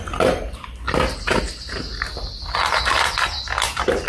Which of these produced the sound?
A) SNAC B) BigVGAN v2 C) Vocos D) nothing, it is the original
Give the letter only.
D